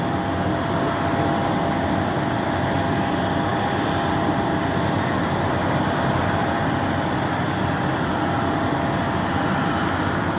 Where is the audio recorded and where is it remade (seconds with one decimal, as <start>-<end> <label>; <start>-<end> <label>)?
0.0-10.4 recorded